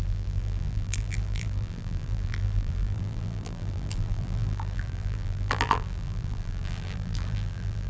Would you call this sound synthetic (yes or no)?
yes